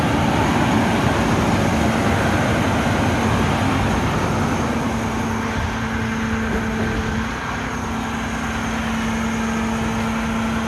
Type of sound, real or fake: real